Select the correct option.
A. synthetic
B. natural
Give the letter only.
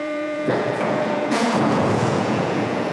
A